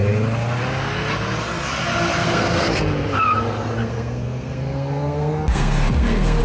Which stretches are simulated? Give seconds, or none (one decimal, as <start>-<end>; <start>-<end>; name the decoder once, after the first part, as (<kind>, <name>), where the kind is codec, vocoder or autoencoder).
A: 2.2-2.8 (codec, SNAC); 3.8-6.4